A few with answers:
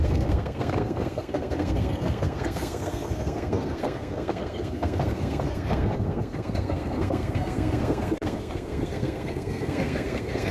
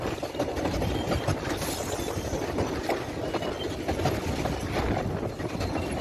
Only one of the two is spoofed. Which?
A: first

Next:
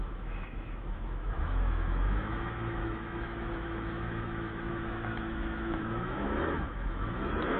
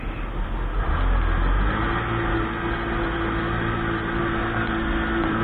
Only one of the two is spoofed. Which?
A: first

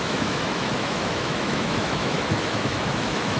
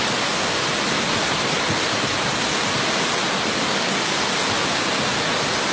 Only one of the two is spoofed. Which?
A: first